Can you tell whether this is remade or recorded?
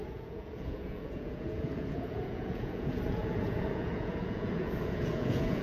remade